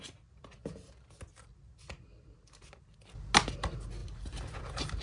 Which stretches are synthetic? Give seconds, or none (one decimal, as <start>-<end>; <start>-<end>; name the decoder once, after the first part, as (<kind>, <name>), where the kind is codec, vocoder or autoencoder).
4.0-4.6 (vocoder, BigVGAN v2)